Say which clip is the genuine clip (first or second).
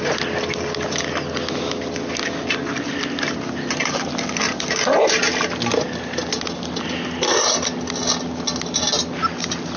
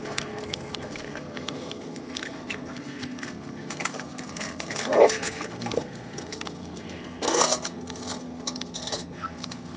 first